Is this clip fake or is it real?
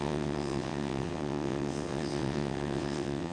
fake